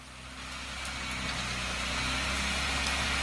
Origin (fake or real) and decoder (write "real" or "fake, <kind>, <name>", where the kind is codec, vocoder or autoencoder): real